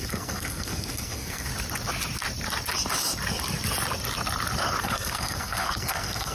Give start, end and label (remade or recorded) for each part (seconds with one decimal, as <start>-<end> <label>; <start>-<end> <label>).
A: 0.0-1.5 remade; 1.5-4.8 recorded; 4.8-6.3 remade